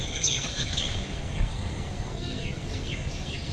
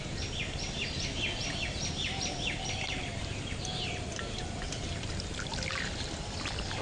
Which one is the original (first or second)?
second